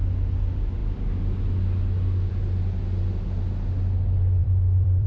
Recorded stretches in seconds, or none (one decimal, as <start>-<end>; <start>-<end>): 0.0-4.4